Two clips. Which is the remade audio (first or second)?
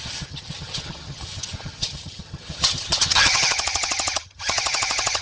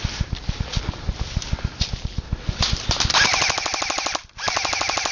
first